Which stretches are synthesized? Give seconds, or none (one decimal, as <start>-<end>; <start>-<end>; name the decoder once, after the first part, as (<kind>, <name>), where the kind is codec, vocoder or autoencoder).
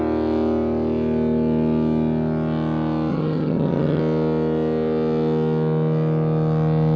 3.1-4.0 (vocoder, HiFi-GAN)